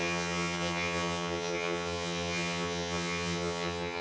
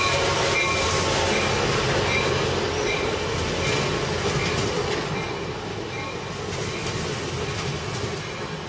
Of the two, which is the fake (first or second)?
first